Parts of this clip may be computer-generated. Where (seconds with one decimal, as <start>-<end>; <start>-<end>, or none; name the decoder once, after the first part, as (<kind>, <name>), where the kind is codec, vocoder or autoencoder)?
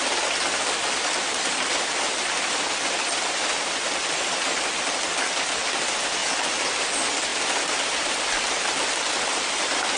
none